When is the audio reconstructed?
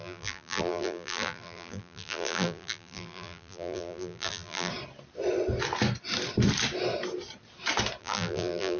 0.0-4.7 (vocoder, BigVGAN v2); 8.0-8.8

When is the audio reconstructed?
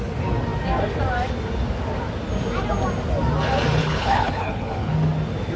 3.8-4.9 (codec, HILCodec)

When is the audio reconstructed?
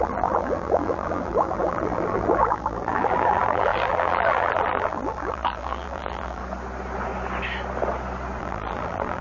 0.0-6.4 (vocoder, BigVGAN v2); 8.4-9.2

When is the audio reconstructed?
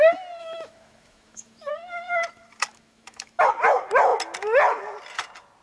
0.4-1.7 (autoencoder, DAC-VAE); 2.7-3.5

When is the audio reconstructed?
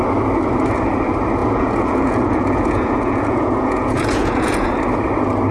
1.4-4.7 (vocoder, Vocos)